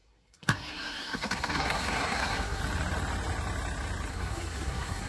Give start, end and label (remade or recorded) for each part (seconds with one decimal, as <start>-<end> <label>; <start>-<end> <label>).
0.0-2.6 remade; 2.6-4.1 recorded; 4.1-5.1 remade